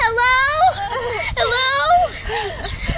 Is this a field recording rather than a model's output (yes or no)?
yes